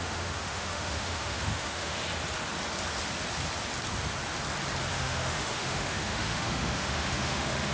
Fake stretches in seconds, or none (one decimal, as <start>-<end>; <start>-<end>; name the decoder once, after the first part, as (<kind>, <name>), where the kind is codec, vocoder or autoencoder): 0.0-2.0 (autoencoder, DAC-VAE); 4.9-7.7